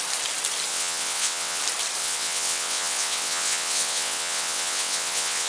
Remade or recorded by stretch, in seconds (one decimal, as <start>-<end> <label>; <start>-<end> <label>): 0.0-0.7 recorded; 0.7-1.6 remade; 1.6-2.0 recorded; 2.0-5.5 remade